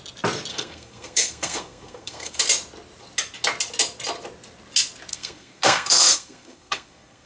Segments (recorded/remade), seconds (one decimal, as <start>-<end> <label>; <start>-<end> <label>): 0.0-0.5 recorded; 0.5-2.4 remade; 2.4-5.1 recorded; 5.1-7.3 remade